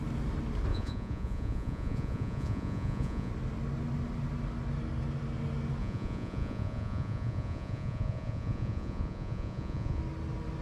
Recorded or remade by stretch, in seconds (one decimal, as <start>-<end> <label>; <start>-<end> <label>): 0.0-0.7 recorded; 0.7-3.3 remade; 3.3-5.8 recorded; 5.8-10.0 remade; 10.0-10.6 recorded